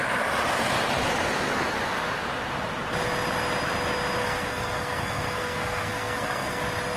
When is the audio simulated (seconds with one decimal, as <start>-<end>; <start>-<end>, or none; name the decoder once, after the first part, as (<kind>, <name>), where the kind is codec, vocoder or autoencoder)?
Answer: 4.2-6.6 (codec, SNAC)